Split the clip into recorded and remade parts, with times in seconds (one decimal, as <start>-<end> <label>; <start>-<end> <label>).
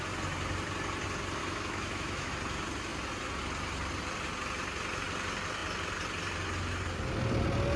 0.0-1.4 recorded; 1.4-2.3 remade; 2.3-7.8 recorded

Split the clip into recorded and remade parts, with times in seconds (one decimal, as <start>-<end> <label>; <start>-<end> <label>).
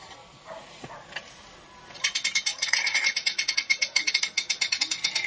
0.0-2.5 recorded; 2.5-4.1 remade; 4.1-5.3 recorded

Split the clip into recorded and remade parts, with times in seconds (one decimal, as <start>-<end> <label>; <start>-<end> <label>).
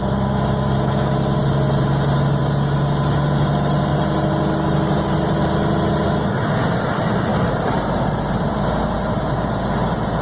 0.0-10.2 recorded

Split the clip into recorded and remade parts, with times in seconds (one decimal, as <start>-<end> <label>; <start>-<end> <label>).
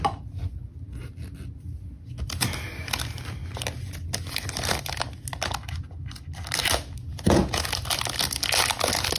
0.0-7.1 recorded; 7.1-7.7 remade; 7.7-9.2 recorded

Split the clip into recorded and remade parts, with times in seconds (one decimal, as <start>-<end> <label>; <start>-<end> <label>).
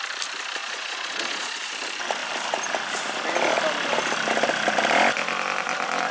0.0-0.6 recorded; 0.6-1.7 remade; 1.7-6.1 recorded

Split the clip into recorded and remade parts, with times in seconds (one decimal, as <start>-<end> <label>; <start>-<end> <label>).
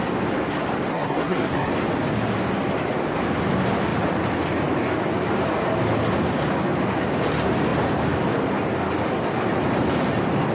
0.0-0.9 recorded; 0.9-1.7 remade; 1.7-10.5 recorded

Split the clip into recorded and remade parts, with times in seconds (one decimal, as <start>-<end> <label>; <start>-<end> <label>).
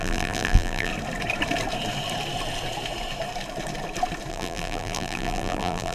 0.0-0.9 remade; 0.9-4.3 recorded; 4.3-5.9 remade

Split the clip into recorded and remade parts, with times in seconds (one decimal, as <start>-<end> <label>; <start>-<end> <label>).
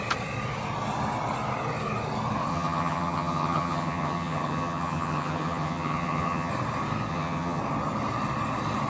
0.0-2.5 recorded; 2.5-6.5 remade; 6.5-7.1 recorded; 7.1-7.6 remade; 7.6-8.9 recorded